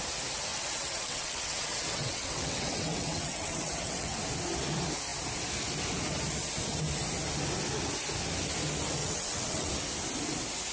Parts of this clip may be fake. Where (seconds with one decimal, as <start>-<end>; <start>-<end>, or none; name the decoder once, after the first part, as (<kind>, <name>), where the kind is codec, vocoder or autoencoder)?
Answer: 0.5-4.2 (vocoder, WaveNeXt); 9.0-9.7